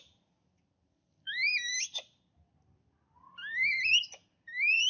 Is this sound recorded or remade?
recorded